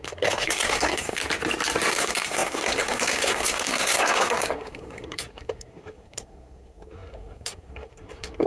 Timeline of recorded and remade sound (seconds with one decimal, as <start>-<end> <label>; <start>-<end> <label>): 0.0-1.2 remade; 1.2-1.9 recorded; 1.9-8.5 remade